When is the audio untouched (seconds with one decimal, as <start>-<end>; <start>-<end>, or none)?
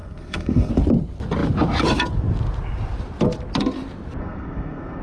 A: 0.7-4.2